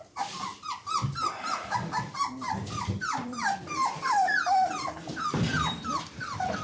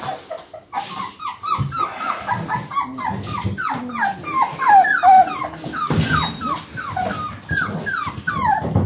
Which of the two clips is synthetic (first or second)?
first